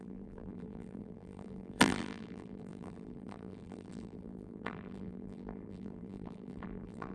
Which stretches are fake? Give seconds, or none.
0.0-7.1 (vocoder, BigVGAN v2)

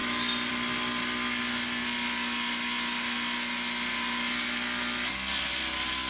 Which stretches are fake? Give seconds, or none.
none